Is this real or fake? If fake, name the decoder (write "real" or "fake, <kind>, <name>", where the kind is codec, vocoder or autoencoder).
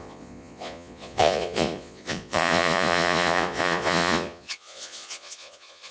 fake, vocoder, Vocos